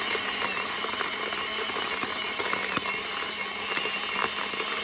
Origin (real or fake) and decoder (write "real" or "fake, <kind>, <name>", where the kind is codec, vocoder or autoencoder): real